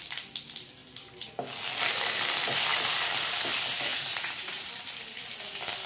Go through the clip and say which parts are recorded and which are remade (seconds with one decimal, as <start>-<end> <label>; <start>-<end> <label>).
0.0-3.9 recorded; 3.9-4.7 remade; 4.7-5.9 recorded